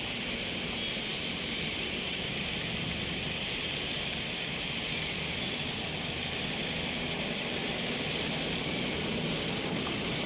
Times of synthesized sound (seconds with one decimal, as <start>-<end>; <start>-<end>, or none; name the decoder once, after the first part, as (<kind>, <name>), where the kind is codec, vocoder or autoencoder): none